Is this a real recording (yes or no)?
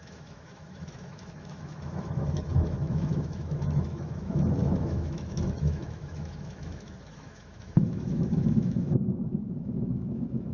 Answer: no